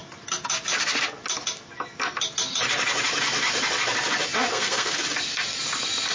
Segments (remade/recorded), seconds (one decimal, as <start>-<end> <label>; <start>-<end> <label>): 0.0-4.5 recorded; 4.5-5.0 remade; 5.0-6.1 recorded